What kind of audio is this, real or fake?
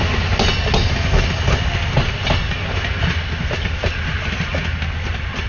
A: real